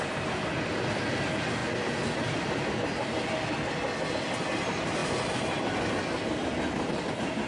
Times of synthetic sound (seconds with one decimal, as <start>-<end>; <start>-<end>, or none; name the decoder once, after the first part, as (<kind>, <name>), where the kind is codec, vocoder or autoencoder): none